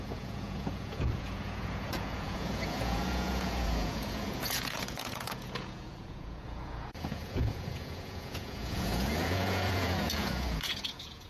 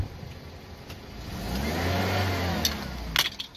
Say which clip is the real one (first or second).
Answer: second